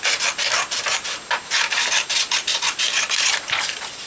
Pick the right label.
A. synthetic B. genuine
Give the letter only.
B